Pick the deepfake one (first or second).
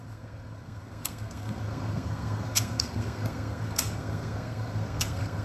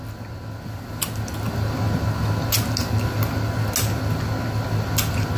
first